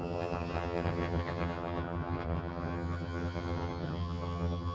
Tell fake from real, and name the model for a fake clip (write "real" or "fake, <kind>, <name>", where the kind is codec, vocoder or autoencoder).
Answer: fake, vocoder, HiFi-GAN